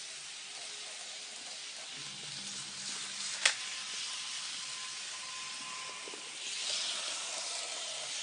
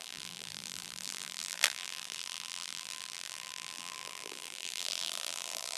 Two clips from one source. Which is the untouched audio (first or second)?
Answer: first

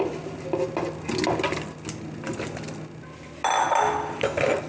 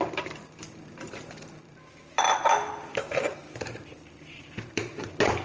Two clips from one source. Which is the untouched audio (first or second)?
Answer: first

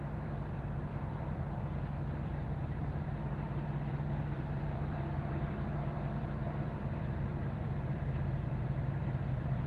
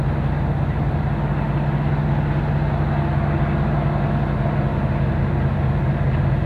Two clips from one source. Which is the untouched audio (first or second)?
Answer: second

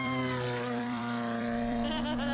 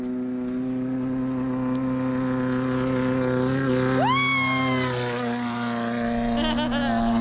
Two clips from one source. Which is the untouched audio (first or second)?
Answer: second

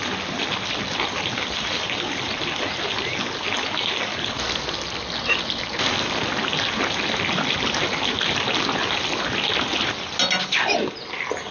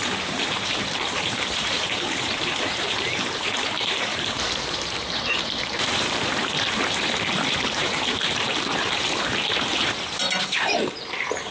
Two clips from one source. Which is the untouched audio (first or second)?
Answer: first